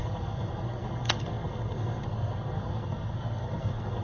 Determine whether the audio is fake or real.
fake